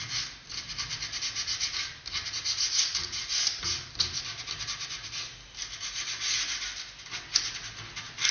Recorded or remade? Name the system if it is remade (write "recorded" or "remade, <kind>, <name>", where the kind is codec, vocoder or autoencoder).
recorded